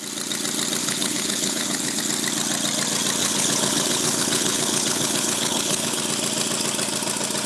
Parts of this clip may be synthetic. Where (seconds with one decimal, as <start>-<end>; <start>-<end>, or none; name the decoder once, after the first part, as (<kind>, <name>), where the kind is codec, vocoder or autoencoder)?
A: 0.8-2.0 (codec, HILCodec); 3.2-6.0